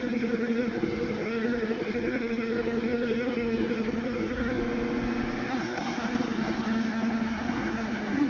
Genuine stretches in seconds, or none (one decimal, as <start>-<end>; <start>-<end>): 4.6-5.5